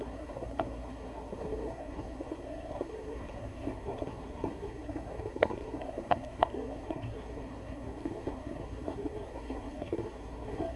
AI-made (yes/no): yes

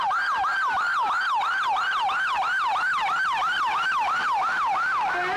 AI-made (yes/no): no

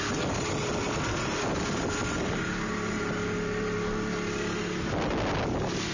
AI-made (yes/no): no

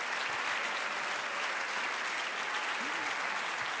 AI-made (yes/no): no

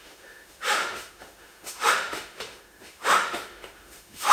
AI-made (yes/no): yes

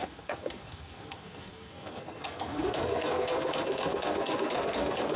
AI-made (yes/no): yes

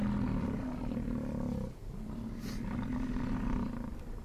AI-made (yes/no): no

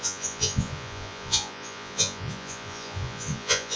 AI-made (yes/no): yes